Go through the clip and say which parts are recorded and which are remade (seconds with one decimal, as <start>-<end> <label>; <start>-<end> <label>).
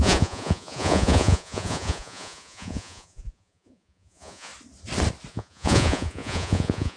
0.0-4.5 remade; 4.5-5.3 recorded; 5.3-7.0 remade